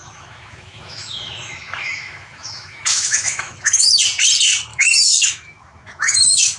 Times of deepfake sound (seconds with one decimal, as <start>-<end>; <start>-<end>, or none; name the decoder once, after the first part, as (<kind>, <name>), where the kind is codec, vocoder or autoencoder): 0.0-4.0 (autoencoder, DAC-VAE); 4.7-6.6